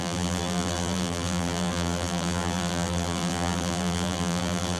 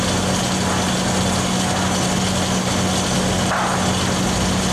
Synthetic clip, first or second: first